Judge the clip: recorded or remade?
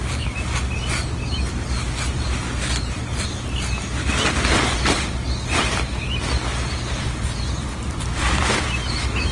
recorded